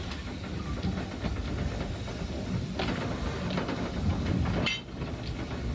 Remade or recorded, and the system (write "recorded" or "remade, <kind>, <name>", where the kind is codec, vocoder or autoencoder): recorded